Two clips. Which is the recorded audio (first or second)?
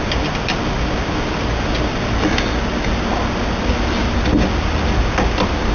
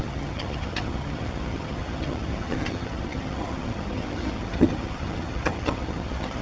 first